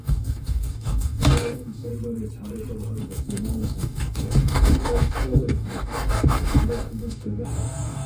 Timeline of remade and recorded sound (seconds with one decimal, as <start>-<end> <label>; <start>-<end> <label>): 0.0-1.9 remade; 1.9-3.0 recorded; 3.0-8.1 remade